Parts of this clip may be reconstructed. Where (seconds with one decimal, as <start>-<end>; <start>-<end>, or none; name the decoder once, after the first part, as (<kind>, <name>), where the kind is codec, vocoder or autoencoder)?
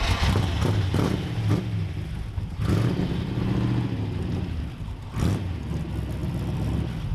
none